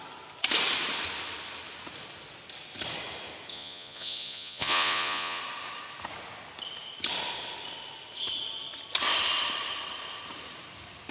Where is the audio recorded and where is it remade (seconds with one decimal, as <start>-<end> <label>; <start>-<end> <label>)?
0.0-3.5 recorded; 3.5-5.4 remade; 5.4-11.1 recorded